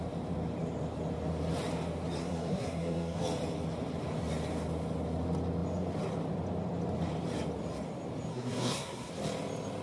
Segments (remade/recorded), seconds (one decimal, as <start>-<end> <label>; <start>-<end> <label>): 0.0-2.2 recorded; 2.2-3.2 remade; 3.2-8.3 recorded; 8.3-9.1 remade; 9.1-9.8 recorded